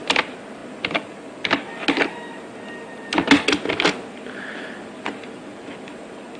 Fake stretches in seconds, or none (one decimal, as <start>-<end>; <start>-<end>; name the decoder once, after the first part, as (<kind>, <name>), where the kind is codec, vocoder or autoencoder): none